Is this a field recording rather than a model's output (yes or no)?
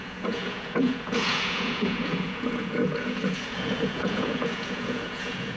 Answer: no